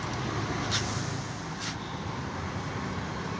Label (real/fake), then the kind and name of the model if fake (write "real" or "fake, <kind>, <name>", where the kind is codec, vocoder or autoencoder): real